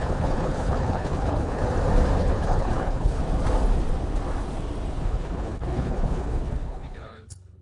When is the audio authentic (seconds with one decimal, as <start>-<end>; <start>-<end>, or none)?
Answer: 1.6-2.2; 3.2-4.9

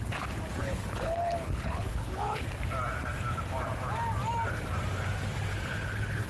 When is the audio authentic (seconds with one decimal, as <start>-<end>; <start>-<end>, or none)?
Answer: 0.0-0.6; 2.5-5.5

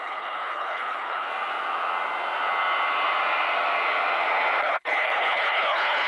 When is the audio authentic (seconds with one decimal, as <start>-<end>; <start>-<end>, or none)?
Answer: 1.3-4.6

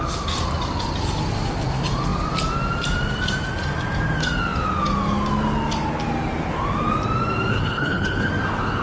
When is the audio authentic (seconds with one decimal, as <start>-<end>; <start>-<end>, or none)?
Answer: 0.0-7.5; 8.3-8.8

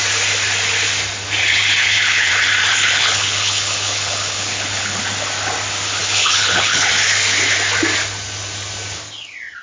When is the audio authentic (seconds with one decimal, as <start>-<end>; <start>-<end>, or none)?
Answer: 0.0-1.8; 2.3-2.7; 5.0-6.0; 6.9-9.6

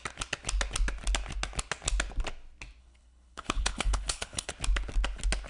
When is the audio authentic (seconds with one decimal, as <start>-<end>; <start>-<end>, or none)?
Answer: 0.0-2.8; 4.5-5.5

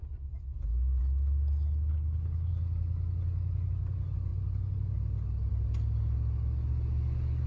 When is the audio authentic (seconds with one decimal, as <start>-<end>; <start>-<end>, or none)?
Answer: 0.0-1.9; 2.5-7.5

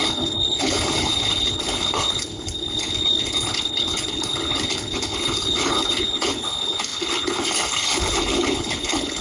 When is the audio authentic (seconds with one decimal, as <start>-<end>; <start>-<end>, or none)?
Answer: none